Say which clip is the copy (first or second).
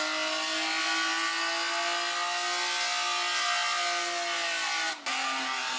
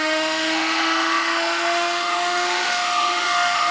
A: second